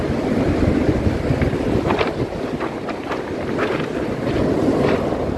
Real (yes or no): yes